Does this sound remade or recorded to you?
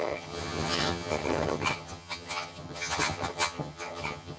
remade